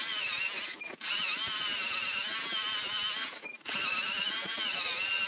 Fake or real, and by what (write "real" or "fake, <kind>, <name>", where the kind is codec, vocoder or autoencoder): real